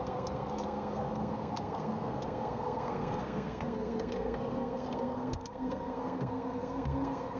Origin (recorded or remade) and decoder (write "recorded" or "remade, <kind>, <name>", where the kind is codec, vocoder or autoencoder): remade, codec, SNAC